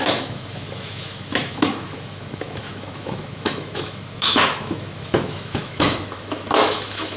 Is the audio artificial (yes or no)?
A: yes